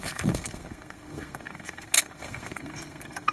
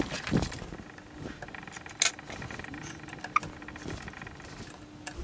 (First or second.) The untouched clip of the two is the second